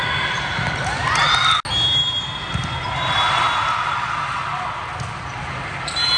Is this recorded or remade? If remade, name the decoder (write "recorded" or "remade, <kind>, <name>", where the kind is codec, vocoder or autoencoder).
recorded